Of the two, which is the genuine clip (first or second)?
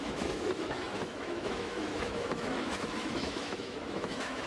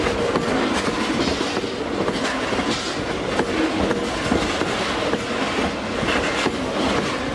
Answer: second